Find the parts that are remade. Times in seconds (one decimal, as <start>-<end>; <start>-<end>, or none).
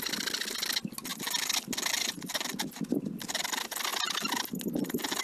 none